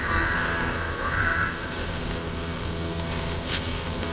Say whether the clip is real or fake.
fake